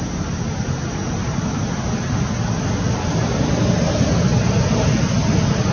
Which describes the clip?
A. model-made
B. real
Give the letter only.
B